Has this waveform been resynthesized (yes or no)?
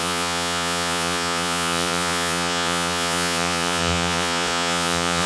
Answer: yes